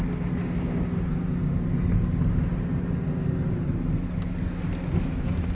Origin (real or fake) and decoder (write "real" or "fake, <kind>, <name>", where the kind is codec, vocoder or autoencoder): real